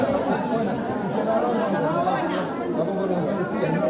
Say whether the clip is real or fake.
real